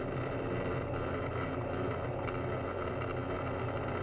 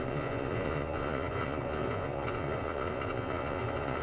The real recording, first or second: first